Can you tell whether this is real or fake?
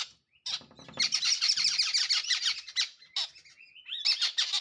real